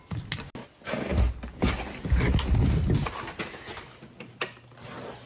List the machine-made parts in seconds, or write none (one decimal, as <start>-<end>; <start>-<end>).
none